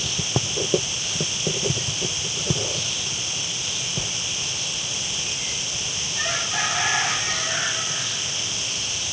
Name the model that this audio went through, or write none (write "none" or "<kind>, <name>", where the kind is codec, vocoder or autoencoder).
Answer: none